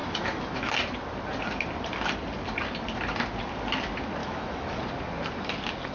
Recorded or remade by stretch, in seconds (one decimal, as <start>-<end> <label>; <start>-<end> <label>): 0.0-0.7 remade; 0.7-4.2 recorded; 4.2-4.8 remade; 4.8-5.9 recorded